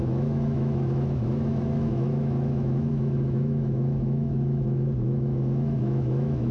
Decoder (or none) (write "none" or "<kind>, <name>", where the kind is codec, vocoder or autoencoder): autoencoder, DAC-VAE